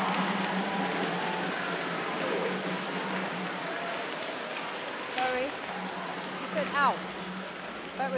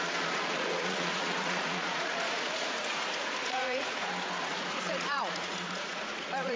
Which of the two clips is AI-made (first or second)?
second